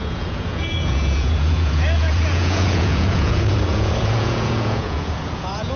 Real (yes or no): no